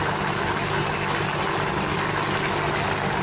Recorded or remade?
recorded